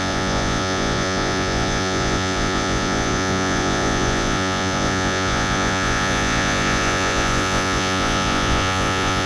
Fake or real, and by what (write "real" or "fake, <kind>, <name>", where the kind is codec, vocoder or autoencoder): fake, vocoder, Vocos